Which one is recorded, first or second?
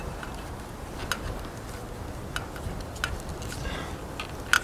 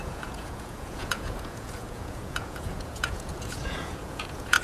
first